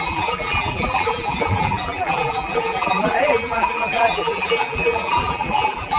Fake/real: fake